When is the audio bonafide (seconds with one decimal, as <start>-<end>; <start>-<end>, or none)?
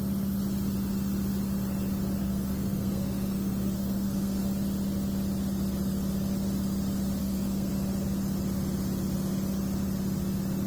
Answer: 0.0-2.2; 4.4-7.2; 7.7-10.7